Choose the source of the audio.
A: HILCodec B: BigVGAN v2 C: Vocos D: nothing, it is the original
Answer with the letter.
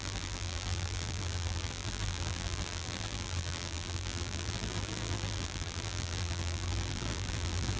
B